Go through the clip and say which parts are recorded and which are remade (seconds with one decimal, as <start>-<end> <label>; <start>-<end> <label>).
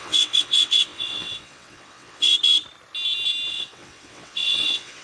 0.0-2.3 remade; 2.3-3.5 recorded; 3.5-5.0 remade